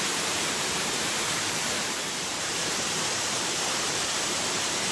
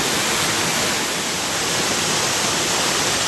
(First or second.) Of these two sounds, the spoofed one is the first